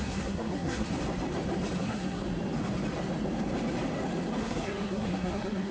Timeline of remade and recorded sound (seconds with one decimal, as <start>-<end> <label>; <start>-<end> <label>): 0.0-0.9 remade; 0.9-1.8 recorded; 1.8-2.2 remade; 2.2-4.4 recorded; 4.4-5.7 remade